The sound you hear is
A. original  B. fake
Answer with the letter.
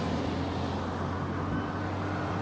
A